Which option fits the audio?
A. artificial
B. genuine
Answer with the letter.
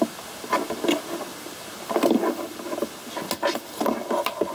B